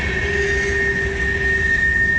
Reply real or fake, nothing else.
real